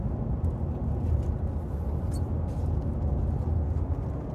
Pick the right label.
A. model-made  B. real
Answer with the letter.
B